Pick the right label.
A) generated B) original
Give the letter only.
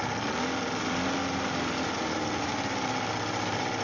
B